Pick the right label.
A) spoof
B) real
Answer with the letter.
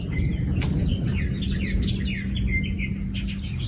B